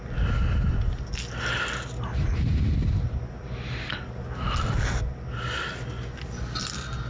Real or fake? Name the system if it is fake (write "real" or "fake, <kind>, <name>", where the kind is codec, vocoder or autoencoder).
real